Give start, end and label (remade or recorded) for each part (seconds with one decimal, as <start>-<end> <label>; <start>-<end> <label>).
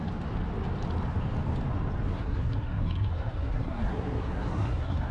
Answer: 0.0-2.1 recorded; 2.1-5.1 remade